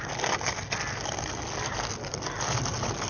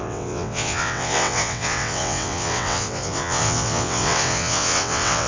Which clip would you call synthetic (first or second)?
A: second